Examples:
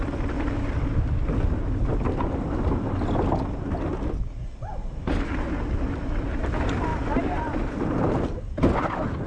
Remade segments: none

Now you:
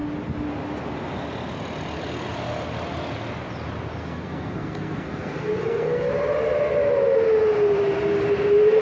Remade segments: 4.0-6.1 (codec, SNAC)

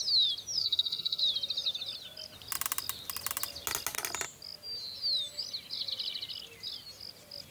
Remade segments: 0.6-1.2 (codec, SNAC)

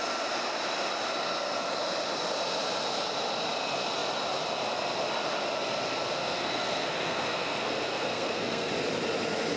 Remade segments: 6.2-8.7 (codec, SNAC)

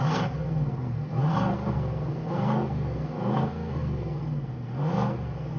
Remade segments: 0.0-5.6 (codec, SNAC)

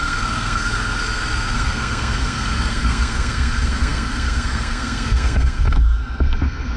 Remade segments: 0.0-6.8 (codec, SNAC)

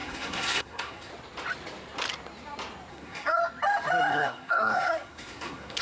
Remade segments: 0.0-1.1 (codec, SNAC); 2.9-3.4; 4.1-5.8

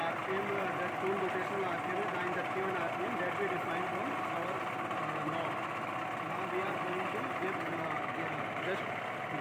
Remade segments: none